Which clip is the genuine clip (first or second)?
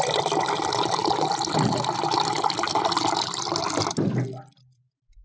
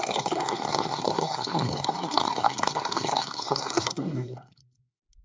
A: first